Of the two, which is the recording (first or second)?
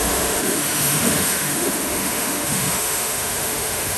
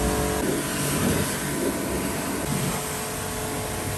second